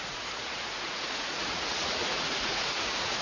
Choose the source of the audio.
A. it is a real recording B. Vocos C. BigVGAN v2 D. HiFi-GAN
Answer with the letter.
B